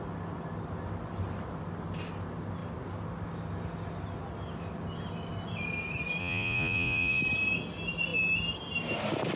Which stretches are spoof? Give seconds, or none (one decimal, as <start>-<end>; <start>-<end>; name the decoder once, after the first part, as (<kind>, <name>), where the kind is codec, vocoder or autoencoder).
6.2-7.2 (vocoder, Vocos)